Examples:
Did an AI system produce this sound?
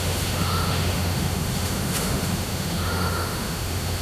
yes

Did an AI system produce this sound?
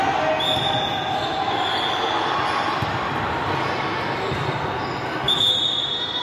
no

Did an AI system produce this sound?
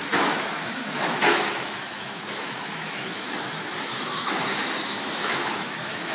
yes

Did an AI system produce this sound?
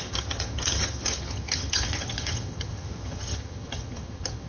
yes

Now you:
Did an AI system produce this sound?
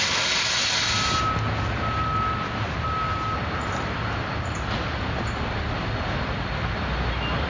no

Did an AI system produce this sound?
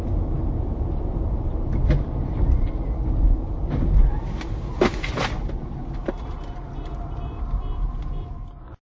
no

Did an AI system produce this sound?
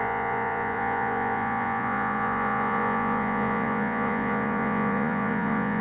yes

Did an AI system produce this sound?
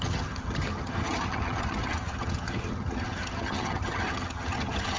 yes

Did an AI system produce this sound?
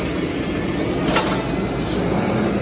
no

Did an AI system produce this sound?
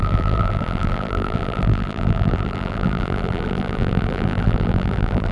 yes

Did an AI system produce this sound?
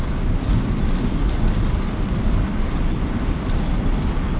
no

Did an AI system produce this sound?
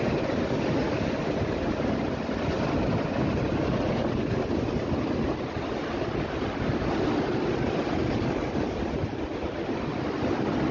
no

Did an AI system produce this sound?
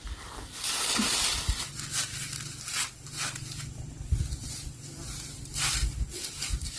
no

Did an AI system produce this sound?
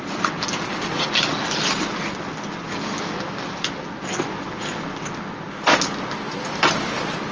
no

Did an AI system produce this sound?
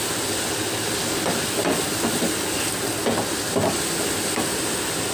no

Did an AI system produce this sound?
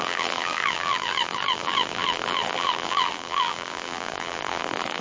yes